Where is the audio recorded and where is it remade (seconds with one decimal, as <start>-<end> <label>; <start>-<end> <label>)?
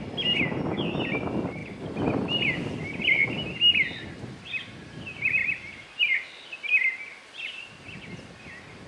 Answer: 0.0-8.9 recorded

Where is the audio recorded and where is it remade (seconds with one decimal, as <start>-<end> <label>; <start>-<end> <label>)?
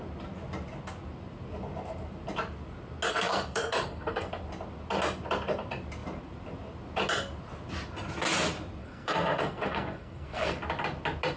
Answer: 0.0-3.1 recorded; 3.1-4.3 remade; 4.3-8.8 recorded; 8.8-10.6 remade; 10.6-11.4 recorded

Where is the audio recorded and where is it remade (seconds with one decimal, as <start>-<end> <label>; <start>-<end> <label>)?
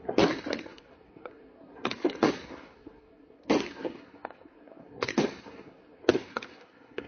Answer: 0.0-7.1 remade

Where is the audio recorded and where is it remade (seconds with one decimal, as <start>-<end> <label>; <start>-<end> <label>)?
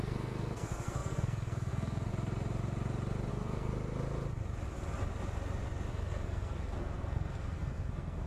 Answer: 0.0-2.1 remade; 2.1-3.3 recorded; 3.3-3.7 remade; 3.7-5.9 recorded; 5.9-8.3 remade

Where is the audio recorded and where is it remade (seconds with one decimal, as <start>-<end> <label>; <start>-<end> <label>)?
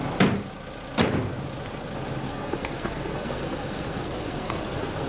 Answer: 0.0-2.2 recorded; 2.2-5.1 remade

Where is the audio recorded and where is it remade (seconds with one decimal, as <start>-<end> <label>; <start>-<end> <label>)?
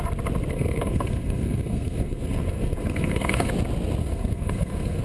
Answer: 0.0-0.5 recorded; 0.5-3.5 remade; 3.5-4.0 recorded; 4.0-5.0 remade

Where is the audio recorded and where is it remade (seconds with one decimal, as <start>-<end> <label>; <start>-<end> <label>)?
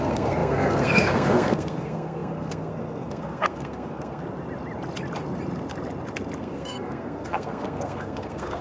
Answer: 0.0-4.2 remade; 4.2-6.4 recorded; 6.4-8.6 remade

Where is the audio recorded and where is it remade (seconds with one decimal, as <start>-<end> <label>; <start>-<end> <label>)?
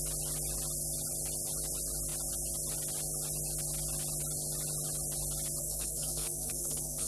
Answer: 0.0-5.6 recorded; 5.6-7.1 remade